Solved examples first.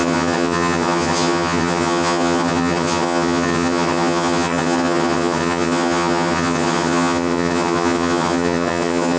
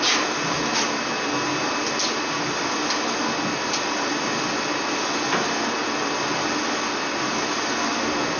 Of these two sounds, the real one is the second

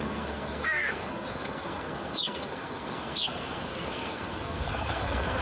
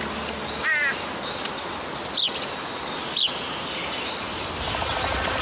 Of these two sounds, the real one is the second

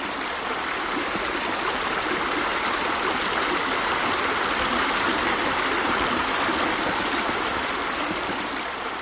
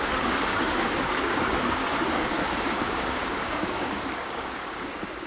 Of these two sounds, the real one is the first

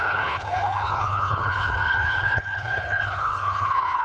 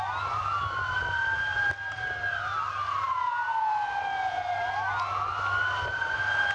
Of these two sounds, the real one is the second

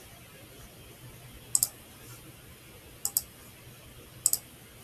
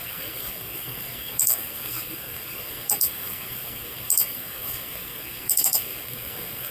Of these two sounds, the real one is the first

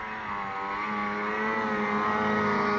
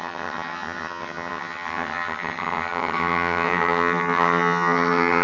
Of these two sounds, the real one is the first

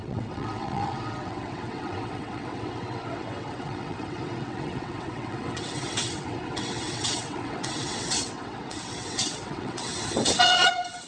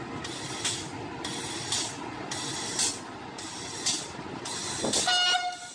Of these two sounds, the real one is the second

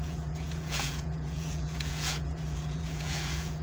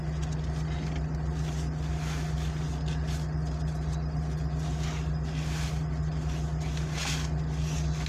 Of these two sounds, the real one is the second